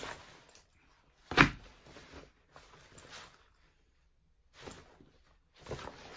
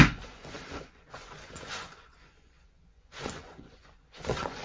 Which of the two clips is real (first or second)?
first